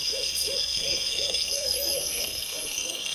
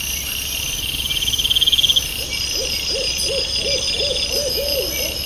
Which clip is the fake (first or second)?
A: first